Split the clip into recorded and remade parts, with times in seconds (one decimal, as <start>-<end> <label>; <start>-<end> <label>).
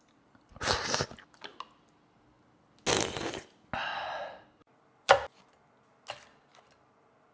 0.0-7.3 recorded